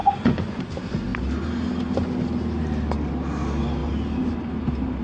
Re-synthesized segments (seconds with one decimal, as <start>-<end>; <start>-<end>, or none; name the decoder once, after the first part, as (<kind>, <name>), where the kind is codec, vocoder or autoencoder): 0.0-0.6 (vocoder, Vocos)